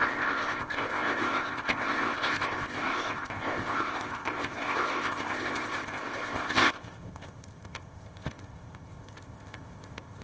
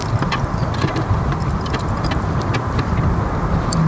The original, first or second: second